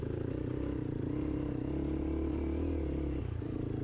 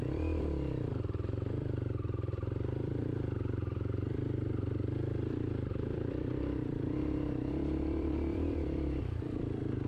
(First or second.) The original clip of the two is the first